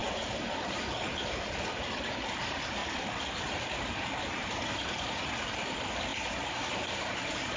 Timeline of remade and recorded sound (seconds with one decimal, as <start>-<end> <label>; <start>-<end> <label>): 0.0-0.8 remade; 0.8-2.8 recorded; 2.8-5.4 remade; 5.4-6.1 recorded; 6.1-7.6 remade

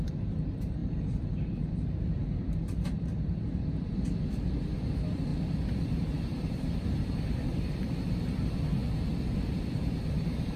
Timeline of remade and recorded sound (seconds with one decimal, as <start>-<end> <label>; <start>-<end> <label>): 0.0-5.3 remade; 5.3-5.8 recorded; 5.8-8.8 remade; 8.8-9.7 recorded; 9.7-10.6 remade

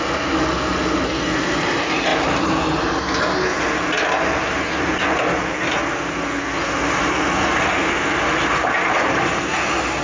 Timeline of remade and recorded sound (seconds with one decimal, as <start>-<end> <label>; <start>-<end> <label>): 0.0-10.0 recorded

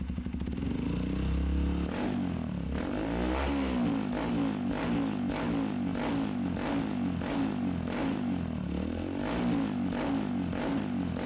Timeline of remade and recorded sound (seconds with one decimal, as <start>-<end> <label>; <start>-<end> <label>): 0.0-11.3 recorded